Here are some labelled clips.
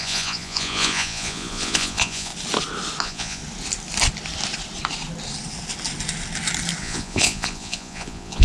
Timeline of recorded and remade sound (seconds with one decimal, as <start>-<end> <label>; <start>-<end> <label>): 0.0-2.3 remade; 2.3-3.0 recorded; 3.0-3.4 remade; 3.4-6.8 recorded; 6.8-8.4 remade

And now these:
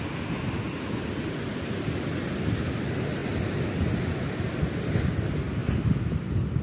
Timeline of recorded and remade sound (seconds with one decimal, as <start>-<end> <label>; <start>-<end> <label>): 0.0-6.6 recorded

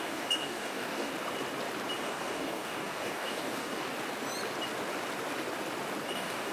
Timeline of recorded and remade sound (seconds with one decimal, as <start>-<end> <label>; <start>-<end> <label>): 0.0-1.1 remade; 1.1-2.0 recorded; 2.0-3.9 remade; 3.9-6.1 recorded; 6.1-6.5 remade